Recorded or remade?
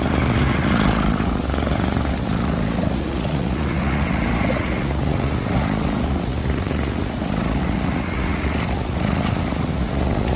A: remade